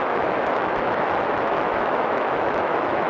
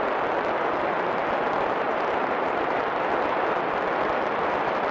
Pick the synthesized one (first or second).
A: first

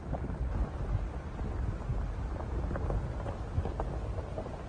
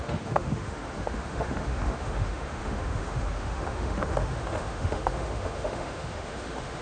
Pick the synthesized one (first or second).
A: second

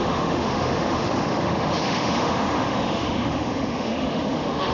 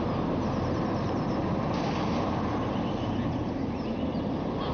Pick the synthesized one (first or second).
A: first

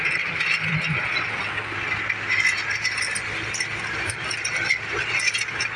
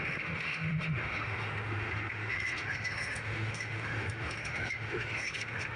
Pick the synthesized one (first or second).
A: second